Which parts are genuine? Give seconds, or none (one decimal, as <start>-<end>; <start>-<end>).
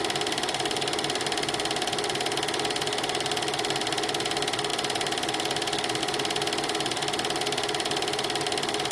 0.0-8.9